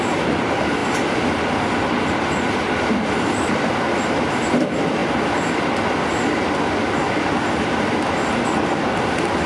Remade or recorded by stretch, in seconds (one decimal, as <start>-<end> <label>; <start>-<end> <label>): 0.0-9.5 recorded